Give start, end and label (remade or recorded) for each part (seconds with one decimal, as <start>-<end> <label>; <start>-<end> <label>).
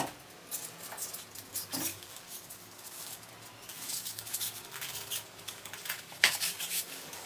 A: 0.0-1.9 recorded; 1.9-3.3 remade; 3.3-3.7 recorded; 3.7-7.3 remade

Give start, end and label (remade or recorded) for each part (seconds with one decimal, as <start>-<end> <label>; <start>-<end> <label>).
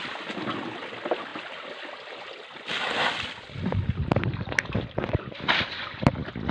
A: 0.0-6.5 recorded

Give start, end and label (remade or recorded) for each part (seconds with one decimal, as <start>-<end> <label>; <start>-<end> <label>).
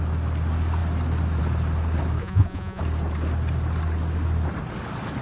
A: 0.0-2.2 recorded; 2.2-2.8 remade; 2.8-5.2 recorded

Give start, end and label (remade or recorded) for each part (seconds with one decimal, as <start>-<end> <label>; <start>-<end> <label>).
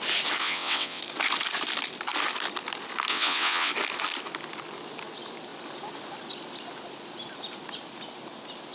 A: 0.0-0.4 recorded; 0.4-1.0 remade; 1.0-3.1 recorded; 3.1-3.7 remade; 3.7-8.7 recorded